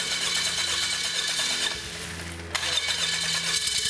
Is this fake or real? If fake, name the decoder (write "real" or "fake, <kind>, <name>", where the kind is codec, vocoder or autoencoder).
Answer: real